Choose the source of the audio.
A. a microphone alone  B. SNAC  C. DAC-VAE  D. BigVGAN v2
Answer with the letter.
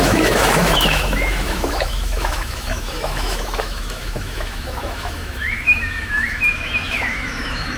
C